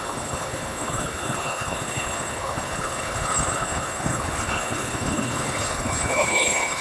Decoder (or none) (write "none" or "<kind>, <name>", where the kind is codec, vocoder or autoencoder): codec, HILCodec